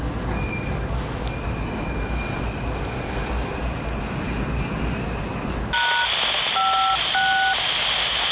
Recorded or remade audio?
recorded